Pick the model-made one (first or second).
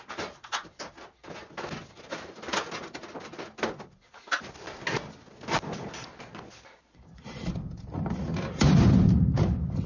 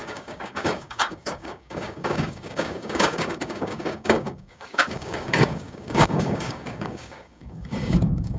second